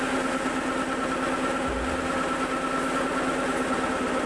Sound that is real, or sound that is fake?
real